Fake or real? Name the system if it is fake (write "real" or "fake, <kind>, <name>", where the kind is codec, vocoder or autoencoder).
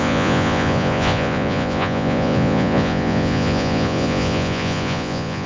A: fake, vocoder, Vocos